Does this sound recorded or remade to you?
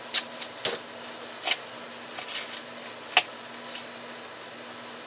recorded